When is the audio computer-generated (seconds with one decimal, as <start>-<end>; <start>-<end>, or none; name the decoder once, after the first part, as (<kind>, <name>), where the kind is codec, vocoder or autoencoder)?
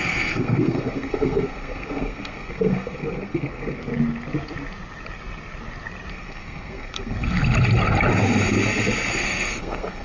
0.0-3.9 (codec, SNAC); 6.1-7.4; 9.1-10.0